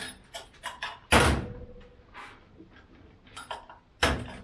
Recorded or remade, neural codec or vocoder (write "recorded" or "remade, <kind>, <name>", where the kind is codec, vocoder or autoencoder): recorded